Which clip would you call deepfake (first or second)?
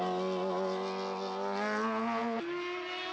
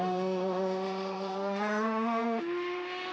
second